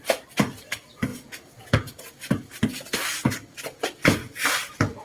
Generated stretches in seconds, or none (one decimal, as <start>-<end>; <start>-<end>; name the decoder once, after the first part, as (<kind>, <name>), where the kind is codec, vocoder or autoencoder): 1.1-2.0 (vocoder, Vocos)